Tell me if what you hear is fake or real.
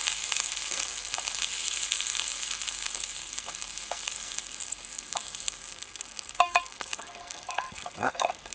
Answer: fake